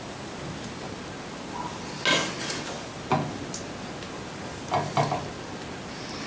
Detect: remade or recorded recorded